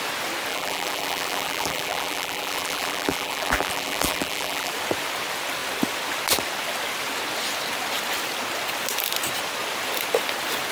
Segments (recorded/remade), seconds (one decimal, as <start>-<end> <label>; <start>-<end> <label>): 0.0-0.5 recorded; 0.5-4.7 remade; 4.7-10.7 recorded